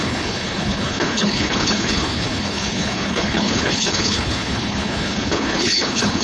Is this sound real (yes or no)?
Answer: no